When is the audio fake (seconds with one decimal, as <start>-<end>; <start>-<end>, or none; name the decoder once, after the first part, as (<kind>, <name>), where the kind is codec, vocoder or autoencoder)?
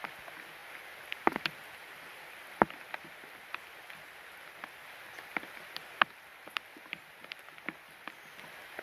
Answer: 6.3-8.0 (vocoder, BigVGAN v2)